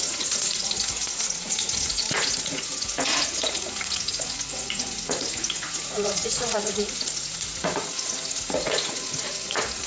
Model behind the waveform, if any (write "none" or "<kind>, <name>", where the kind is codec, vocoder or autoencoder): vocoder, Vocos